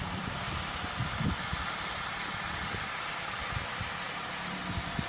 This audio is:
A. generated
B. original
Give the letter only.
B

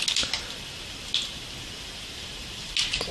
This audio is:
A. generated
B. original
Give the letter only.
B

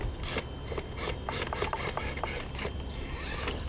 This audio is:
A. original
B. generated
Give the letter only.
A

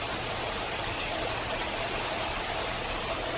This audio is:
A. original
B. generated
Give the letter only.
A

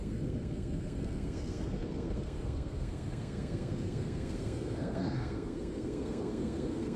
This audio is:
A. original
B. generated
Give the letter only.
B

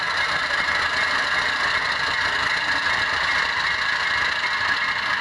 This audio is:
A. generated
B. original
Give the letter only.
B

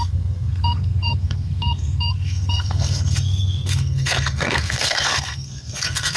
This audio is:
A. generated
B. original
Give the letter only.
A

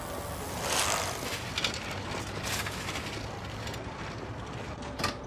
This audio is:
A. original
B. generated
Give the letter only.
A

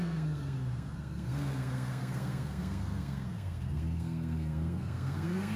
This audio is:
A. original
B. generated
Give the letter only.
B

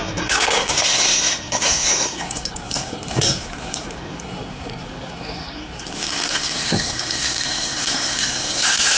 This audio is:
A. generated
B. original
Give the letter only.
A